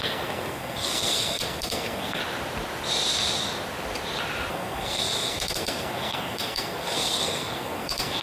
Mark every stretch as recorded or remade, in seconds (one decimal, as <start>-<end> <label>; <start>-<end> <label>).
0.0-2.2 remade; 2.2-4.5 recorded; 4.5-8.2 remade